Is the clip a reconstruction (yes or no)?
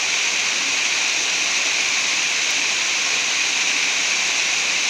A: no